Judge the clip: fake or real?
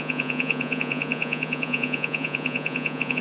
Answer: fake